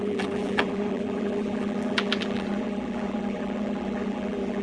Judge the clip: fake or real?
fake